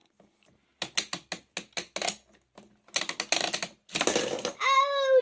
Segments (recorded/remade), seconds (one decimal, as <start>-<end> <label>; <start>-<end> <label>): 0.0-5.2 recorded